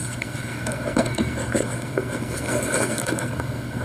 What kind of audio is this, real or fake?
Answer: fake